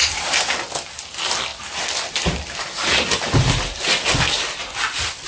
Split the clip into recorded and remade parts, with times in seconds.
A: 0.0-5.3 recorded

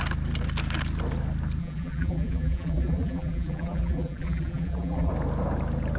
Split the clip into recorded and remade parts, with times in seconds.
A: 0.0-1.6 recorded; 1.6-5.1 remade; 5.1-6.0 recorded

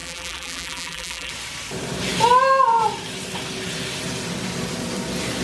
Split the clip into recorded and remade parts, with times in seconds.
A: 0.0-1.3 remade; 1.3-5.4 recorded

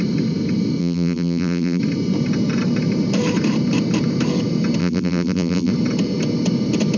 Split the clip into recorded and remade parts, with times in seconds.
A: 0.0-0.8 recorded; 0.8-1.8 remade; 1.8-4.8 recorded; 4.8-5.7 remade; 5.7-7.0 recorded

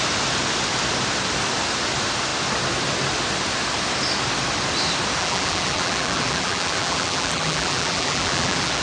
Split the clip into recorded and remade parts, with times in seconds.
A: 0.0-5.2 recorded; 5.2-8.8 remade

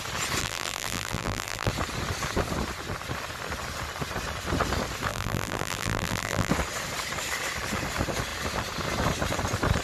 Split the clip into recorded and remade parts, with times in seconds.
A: 0.0-0.4 recorded; 0.4-1.7 remade; 1.7-5.1 recorded; 5.1-6.5 remade; 6.5-9.8 recorded

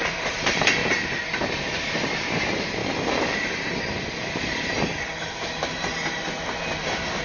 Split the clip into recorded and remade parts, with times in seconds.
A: 0.0-0.8 remade; 0.8-1.4 recorded; 1.4-2.8 remade; 2.8-7.2 recorded